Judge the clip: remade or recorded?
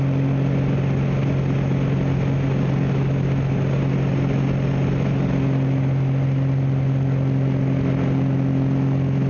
recorded